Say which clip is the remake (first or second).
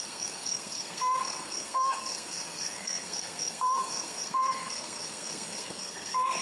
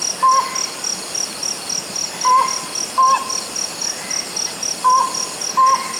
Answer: first